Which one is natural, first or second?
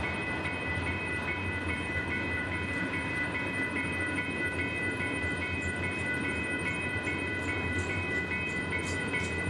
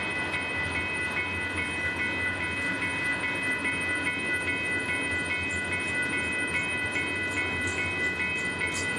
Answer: second